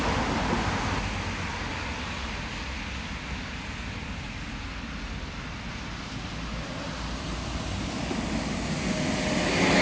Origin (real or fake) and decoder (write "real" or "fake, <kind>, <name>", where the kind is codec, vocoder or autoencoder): real